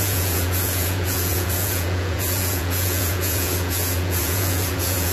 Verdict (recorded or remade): remade